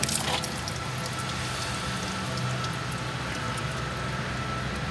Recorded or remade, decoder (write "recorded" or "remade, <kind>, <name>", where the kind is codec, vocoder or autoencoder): recorded